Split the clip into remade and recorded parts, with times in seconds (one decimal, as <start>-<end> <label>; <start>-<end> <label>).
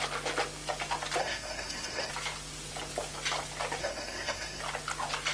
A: 0.0-1.2 recorded; 1.2-2.1 remade; 2.1-3.8 recorded; 3.8-4.6 remade; 4.6-5.3 recorded